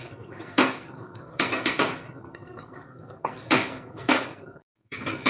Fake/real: fake